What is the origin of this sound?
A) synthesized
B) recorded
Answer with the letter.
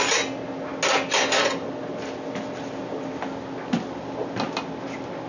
B